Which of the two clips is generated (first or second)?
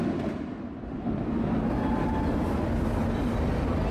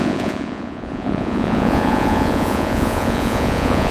second